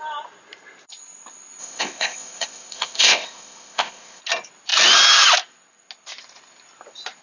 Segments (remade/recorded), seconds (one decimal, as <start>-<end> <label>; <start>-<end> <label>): 0.0-1.6 recorded; 1.6-4.2 remade; 4.2-7.2 recorded